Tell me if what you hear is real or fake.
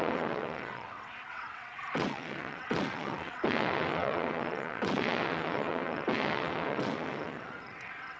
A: fake